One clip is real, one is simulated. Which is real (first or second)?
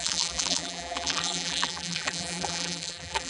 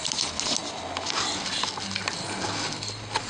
second